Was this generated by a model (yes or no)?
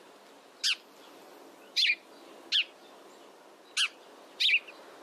no